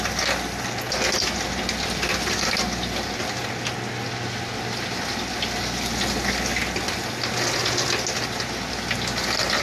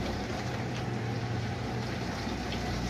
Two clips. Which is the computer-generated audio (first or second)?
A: second